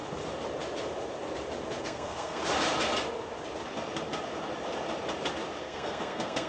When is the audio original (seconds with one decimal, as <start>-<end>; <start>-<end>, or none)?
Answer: 0.0-1.8; 2.4-5.6